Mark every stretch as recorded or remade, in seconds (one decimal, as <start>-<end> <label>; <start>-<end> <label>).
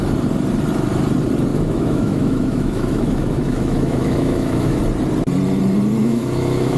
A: 0.0-1.5 recorded; 1.5-4.8 remade; 4.8-6.0 recorded; 6.0-6.8 remade